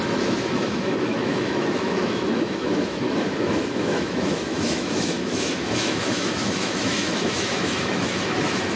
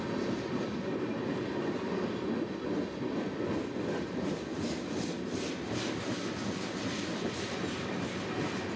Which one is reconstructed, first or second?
first